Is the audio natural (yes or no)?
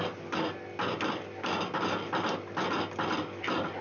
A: yes